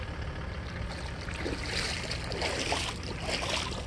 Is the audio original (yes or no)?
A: yes